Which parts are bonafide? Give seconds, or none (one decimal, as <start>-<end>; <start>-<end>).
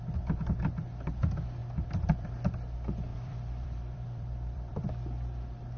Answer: 0.0-1.6; 2.5-3.1; 4.8-5.8